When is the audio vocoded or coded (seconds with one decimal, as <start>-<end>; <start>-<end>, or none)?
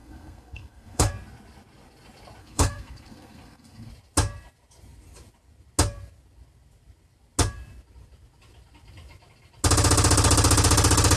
0.0-1.1; 2.4-3.9